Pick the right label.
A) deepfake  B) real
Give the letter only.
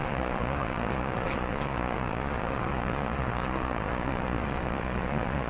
A